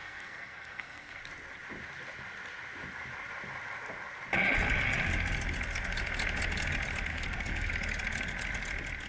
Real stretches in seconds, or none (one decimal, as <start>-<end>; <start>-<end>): 1.2-7.1; 7.7-9.1